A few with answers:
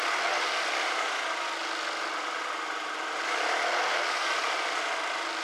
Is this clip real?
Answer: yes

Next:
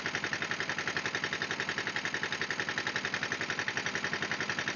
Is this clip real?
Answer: yes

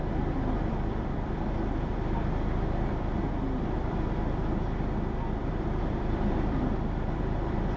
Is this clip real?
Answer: no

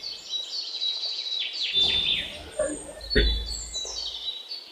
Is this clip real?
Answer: yes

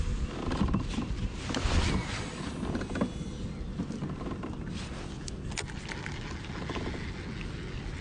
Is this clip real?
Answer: yes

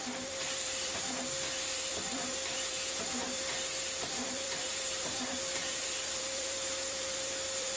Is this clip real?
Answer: no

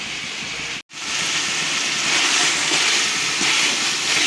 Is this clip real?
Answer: yes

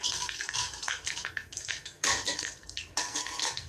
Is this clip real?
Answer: no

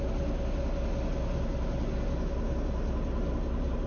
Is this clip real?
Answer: yes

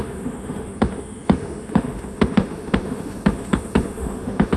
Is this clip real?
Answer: no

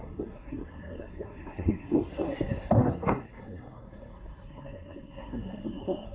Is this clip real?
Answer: no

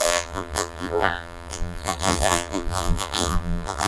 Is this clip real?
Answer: no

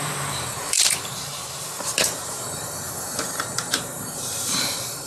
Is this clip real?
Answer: no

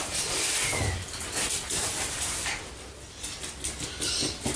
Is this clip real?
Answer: yes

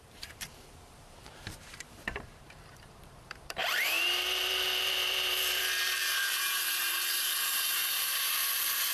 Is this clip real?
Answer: no